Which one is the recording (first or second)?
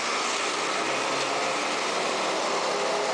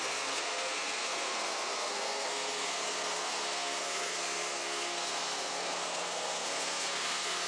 first